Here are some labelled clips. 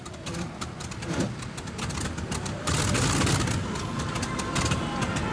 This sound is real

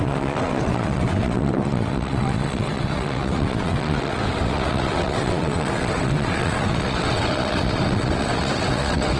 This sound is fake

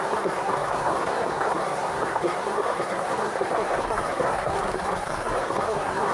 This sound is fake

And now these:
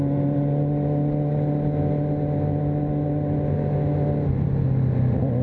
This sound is real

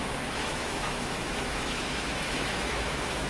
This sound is fake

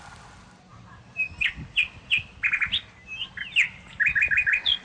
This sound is real